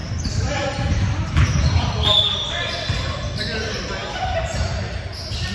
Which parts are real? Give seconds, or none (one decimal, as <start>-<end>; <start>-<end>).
2.5-5.5